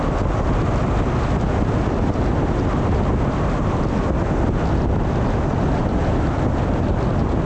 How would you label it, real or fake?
real